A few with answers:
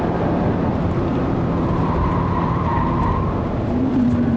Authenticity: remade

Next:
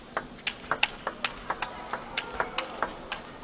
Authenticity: recorded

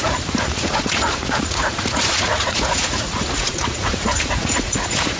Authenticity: remade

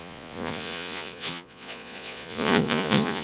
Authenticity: remade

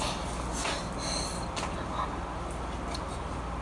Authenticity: recorded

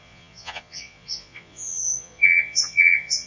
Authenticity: remade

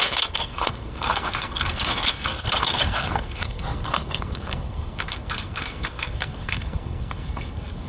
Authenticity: remade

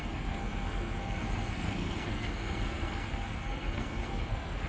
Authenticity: remade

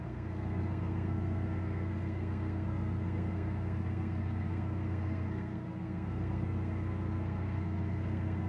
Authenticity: remade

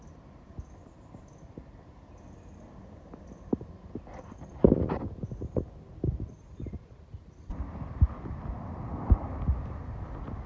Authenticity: remade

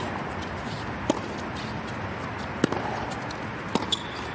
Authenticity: recorded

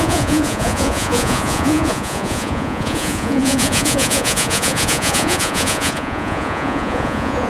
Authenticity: remade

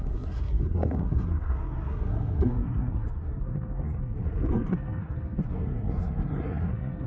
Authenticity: remade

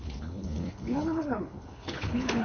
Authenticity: remade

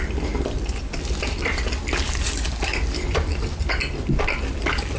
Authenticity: recorded